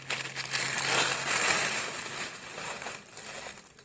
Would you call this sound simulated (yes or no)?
no